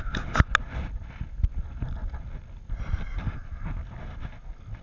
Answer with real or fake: real